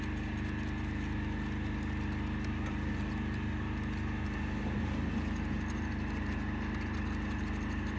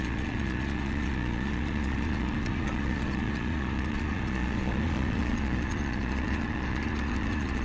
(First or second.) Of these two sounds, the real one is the first